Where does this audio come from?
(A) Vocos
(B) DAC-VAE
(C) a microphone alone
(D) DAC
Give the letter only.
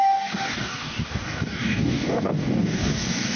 D